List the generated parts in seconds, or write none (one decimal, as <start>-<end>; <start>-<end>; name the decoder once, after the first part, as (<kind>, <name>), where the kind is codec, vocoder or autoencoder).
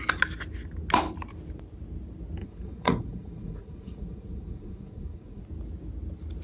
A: 2.4-5.4 (vocoder, Vocos)